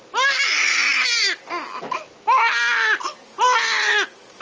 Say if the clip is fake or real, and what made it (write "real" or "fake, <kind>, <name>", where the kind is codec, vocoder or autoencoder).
real